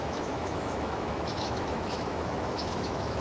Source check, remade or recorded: remade